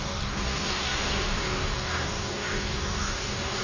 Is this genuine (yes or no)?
no